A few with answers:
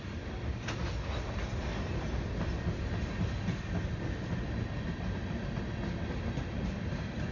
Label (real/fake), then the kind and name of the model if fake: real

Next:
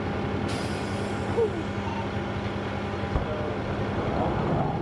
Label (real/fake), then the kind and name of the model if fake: real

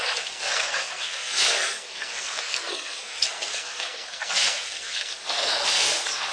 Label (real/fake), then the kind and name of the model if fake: fake, codec, SNAC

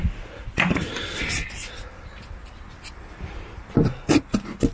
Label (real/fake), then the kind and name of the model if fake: real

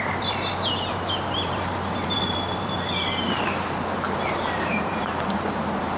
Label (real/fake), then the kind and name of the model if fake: fake, vocoder, BigVGAN v2